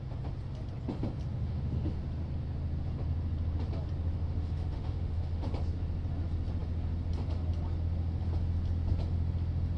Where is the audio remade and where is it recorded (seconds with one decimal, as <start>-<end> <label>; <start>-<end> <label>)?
0.0-1.3 recorded; 1.3-2.0 remade; 2.0-4.1 recorded; 4.1-5.5 remade; 5.5-9.8 recorded